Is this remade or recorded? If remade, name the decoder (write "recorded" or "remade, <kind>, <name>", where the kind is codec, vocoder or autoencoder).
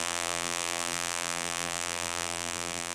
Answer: remade, vocoder, BigVGAN v2